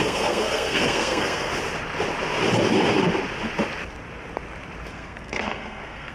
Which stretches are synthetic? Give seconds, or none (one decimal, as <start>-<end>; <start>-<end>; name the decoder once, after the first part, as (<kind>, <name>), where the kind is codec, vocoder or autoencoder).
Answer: 0.0-1.5 (codec, SNAC); 4.9-6.1